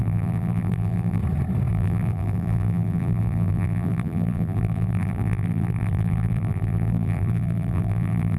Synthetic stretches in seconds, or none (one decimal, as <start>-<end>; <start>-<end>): 0.0-1.2; 1.7-8.4